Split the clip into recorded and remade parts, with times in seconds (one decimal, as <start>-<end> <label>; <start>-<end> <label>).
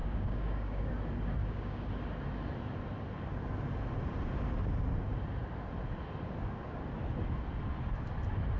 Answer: 0.0-0.9 remade; 0.9-1.4 recorded; 1.4-1.9 remade; 1.9-8.6 recorded